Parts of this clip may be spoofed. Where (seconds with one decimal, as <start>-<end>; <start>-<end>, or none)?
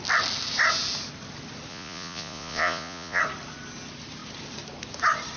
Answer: 1.7-3.2